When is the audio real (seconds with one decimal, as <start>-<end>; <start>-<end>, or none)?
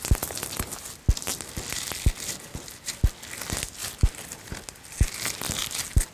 0.0-6.1